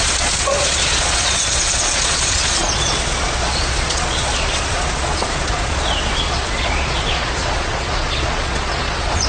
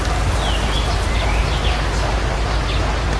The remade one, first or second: first